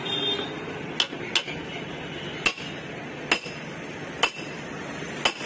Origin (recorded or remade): recorded